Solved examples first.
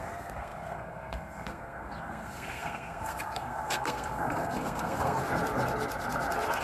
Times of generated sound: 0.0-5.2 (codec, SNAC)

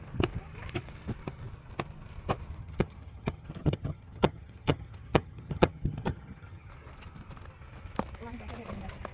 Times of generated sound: 2.6-6.7 (vocoder, HiFi-GAN)

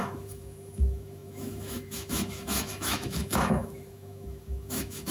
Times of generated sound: 0.0-5.1 (autoencoder, DAC-VAE)

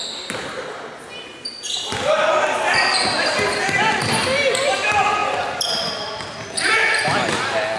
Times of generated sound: none

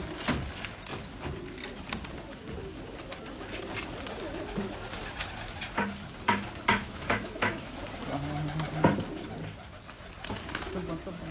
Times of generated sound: 6.7-7.8 (autoencoder, DAC-VAE)

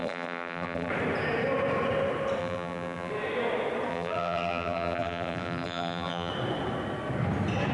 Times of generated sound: 0.0-0.9 (vocoder, BigVGAN v2); 2.4-3.1; 3.9-6.3

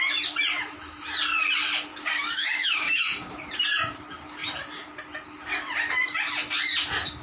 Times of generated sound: 1.9-3.3 (codec, DAC)

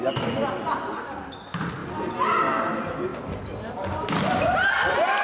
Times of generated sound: none